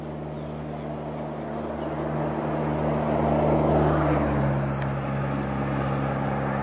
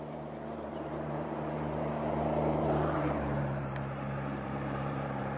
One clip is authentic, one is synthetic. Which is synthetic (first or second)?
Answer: second